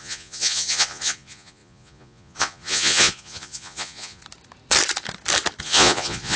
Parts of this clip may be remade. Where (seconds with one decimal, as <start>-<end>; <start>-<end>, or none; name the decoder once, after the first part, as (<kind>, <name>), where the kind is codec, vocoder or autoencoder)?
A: 0.0-4.2 (vocoder, Vocos); 5.6-6.4